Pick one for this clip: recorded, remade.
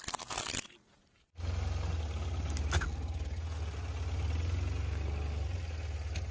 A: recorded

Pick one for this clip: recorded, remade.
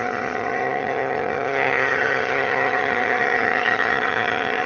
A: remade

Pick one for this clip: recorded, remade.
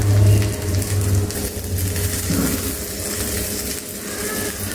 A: recorded